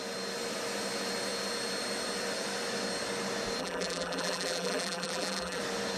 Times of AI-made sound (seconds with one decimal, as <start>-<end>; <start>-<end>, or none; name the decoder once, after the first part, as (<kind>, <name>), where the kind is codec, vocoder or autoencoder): 3.6-5.6 (vocoder, BigVGAN v2)